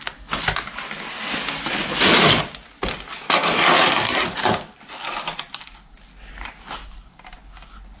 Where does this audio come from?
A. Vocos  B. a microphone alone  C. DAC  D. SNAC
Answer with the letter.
B